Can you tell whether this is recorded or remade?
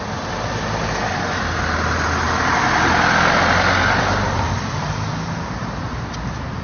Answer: recorded